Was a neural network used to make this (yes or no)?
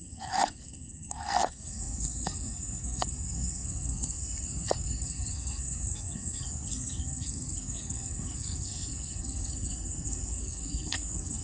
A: yes